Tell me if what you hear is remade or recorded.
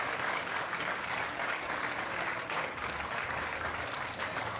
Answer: remade